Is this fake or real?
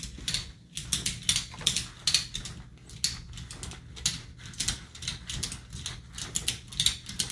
real